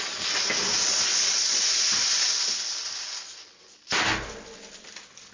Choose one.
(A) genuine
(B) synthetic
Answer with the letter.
A